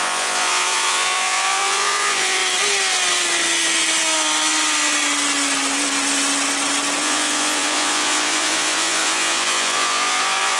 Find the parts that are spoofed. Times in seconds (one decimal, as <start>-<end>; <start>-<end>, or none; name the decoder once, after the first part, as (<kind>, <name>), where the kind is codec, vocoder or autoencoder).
0.0-2.4 (vocoder, Vocos); 7.0-10.6